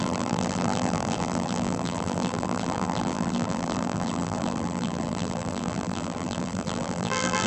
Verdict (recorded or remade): remade